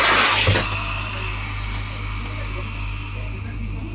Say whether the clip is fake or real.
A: real